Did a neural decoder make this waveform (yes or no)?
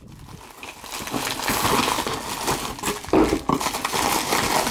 no